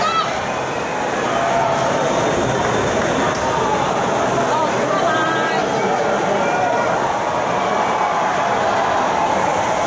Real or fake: real